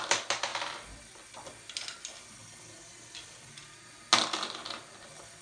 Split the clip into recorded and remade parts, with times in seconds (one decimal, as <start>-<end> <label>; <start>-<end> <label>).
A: 0.0-5.4 recorded